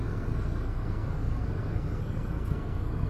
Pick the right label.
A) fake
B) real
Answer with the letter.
A